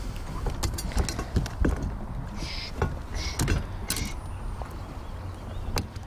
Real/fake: real